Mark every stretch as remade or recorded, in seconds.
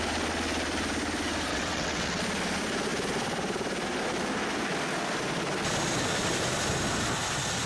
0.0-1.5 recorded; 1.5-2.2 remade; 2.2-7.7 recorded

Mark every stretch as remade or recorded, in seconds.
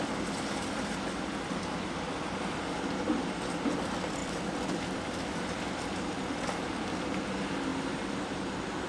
0.0-8.9 recorded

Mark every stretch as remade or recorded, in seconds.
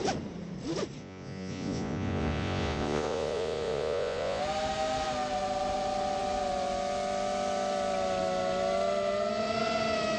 0.0-1.0 recorded; 1.0-4.4 remade; 4.4-10.2 recorded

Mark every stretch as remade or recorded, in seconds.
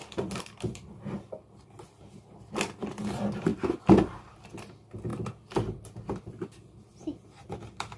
0.0-5.1 remade; 5.1-6.2 recorded; 6.2-8.0 remade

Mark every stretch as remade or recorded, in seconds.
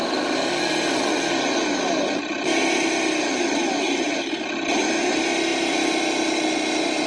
0.0-7.1 recorded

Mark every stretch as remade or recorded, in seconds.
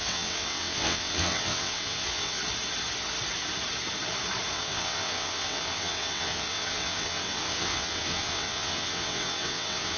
0.0-2.4 remade; 2.4-4.5 recorded; 4.5-10.0 remade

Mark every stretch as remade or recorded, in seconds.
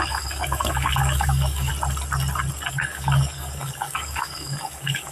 0.0-1.7 remade; 1.7-2.7 recorded; 2.7-5.1 remade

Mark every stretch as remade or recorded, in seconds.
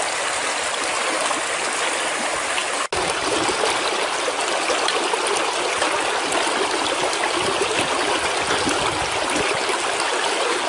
0.0-10.7 recorded